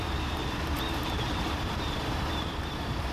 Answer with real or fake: fake